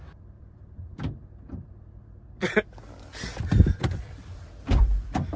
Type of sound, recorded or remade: remade